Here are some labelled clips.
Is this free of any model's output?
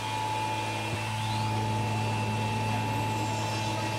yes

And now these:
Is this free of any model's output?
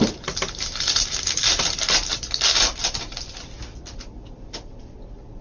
no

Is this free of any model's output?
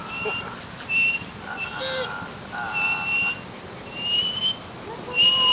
yes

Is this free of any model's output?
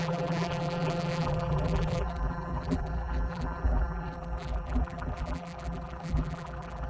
no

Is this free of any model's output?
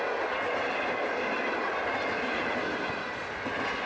yes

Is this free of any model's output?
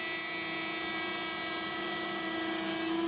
yes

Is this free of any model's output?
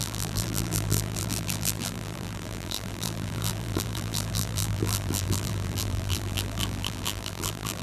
no